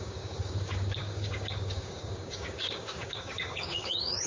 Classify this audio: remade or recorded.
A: remade